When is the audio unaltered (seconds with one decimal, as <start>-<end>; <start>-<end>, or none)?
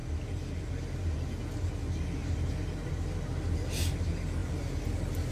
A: 0.0-5.3